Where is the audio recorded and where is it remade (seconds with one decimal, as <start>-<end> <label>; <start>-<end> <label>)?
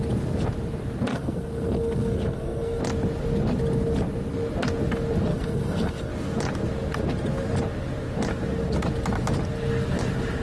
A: 0.0-1.1 recorded; 1.1-2.8 remade; 2.8-5.3 recorded; 5.3-6.1 remade; 6.1-10.4 recorded